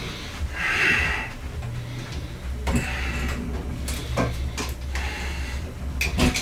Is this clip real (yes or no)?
yes